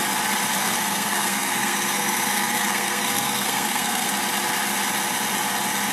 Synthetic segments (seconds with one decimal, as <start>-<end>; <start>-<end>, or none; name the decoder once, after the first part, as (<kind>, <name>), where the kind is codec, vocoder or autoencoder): 0.6-4.1 (codec, SNAC)

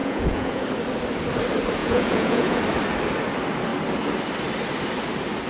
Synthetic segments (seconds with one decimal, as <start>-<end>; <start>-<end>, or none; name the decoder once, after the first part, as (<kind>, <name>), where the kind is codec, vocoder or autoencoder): 0.0-0.6 (vocoder, Vocos); 1.8-2.6

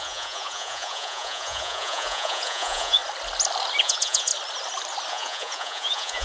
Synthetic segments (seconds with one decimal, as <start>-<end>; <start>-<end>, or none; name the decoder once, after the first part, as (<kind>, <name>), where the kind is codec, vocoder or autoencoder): 0.0-3.0 (vocoder, Vocos); 3.8-4.3; 5.1-6.2

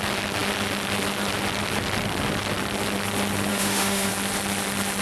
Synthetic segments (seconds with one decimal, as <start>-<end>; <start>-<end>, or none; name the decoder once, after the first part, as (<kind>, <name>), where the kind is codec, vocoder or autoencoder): 3.5-4.1 (autoencoder, DAC-VAE)

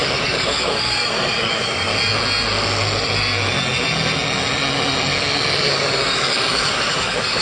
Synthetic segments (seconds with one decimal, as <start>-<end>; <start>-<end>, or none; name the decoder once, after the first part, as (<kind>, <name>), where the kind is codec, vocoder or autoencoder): 0.0-1.9 (codec, DAC); 5.7-7.4

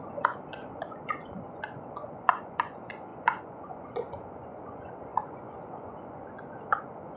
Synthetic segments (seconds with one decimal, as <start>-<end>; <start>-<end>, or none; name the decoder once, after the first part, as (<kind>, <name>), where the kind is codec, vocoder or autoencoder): 0.0-7.2 (vocoder, Vocos)